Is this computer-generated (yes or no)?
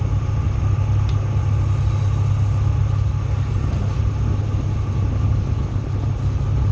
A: no